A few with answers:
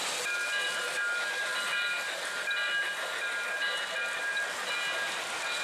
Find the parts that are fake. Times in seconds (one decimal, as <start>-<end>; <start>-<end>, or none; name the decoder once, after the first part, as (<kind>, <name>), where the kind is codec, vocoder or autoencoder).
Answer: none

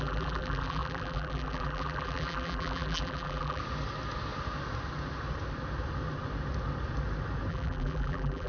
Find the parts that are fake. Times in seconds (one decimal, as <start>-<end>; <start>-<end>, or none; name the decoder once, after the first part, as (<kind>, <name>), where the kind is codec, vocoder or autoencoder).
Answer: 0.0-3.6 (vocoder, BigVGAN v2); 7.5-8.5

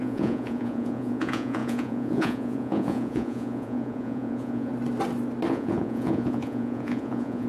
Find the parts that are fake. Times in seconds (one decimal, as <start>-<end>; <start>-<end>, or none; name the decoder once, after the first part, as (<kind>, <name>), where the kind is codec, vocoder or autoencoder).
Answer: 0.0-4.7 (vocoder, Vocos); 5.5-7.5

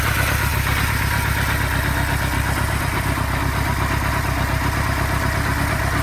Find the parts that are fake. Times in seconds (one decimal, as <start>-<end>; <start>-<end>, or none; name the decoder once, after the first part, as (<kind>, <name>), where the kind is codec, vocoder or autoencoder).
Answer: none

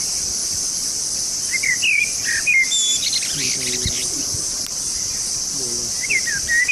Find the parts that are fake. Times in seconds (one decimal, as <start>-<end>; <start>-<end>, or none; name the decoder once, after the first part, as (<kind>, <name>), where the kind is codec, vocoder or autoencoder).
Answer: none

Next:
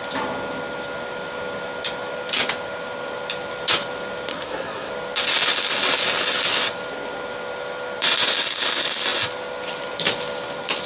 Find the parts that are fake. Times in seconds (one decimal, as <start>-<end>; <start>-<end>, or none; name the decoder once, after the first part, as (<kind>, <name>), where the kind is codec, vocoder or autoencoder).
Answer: 4.3-4.9 (codec, SNAC)

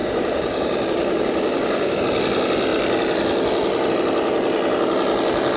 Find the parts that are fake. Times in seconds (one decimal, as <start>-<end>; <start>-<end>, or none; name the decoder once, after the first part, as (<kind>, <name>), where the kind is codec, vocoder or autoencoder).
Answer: 0.0-2.0 (codec, DAC)